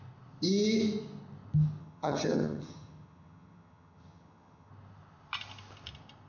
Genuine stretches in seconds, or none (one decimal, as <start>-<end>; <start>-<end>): 0.0-1.8; 4.7-6.3